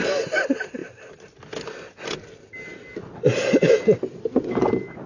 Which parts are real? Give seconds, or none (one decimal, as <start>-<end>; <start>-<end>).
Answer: 0.0-5.1

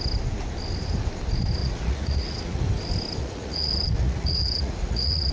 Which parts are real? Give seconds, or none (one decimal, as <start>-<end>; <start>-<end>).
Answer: 0.0-1.6; 2.6-3.2

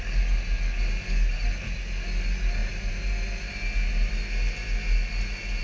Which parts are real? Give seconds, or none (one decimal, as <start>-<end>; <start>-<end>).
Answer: 0.0-5.6

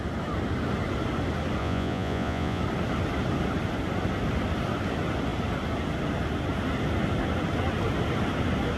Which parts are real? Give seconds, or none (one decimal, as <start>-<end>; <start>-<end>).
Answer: 0.0-1.6; 2.6-8.8

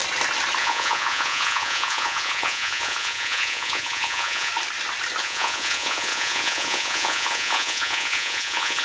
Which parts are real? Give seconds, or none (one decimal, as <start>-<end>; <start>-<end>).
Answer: 0.0-0.6; 4.5-5.2

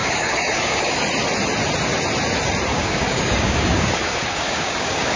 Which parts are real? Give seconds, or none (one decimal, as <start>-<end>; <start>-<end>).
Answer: 1.0-2.7

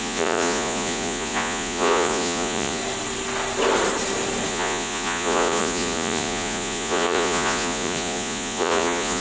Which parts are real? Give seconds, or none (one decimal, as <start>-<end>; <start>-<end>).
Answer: 2.8-4.5